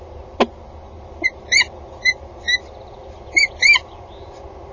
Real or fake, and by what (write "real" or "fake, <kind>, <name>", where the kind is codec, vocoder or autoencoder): real